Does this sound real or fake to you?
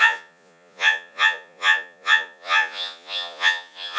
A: fake